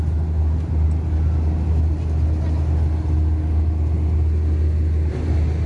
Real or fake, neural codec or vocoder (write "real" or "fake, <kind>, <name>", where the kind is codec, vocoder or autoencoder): real